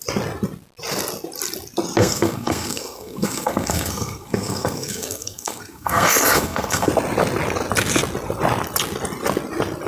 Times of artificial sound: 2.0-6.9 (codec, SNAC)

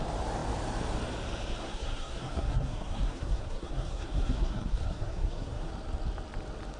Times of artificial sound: 1.6-5.7 (codec, SNAC)

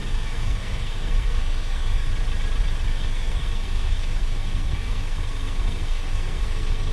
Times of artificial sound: 0.0-2.1 (codec, SNAC); 2.9-6.9

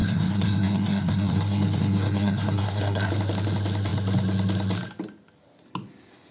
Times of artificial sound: 0.0-3.1 (codec, SNAC)

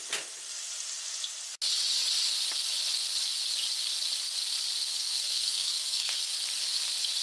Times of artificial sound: 4.9-6.2 (codec, SNAC)